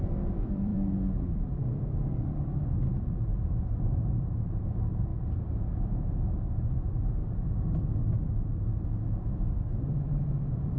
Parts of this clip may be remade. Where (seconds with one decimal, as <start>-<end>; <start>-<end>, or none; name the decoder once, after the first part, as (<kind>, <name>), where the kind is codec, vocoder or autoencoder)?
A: 0.0-3.3 (vocoder, BigVGAN v2); 4.1-5.1; 6.3-7.2; 9.2-10.8